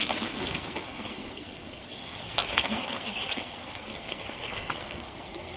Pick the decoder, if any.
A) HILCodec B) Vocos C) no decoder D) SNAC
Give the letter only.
D